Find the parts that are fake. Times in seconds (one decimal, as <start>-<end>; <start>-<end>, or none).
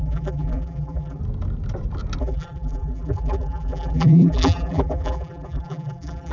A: 0.0-1.2; 2.2-6.3